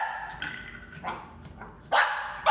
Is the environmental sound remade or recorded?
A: recorded